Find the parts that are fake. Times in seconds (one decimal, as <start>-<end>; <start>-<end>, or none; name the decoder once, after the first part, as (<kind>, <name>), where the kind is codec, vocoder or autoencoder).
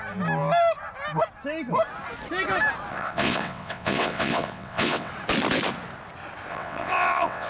2.9-5.1 (vocoder, WaveNeXt); 6.5-7.5